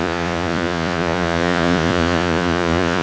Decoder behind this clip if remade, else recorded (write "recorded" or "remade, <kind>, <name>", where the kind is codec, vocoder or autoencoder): remade, vocoder, Vocos